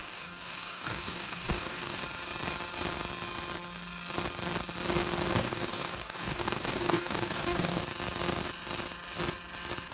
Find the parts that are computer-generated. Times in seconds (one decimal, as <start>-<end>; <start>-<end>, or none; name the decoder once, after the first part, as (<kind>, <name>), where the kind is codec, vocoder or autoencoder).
0.0-2.0 (codec, DAC); 5.3-7.8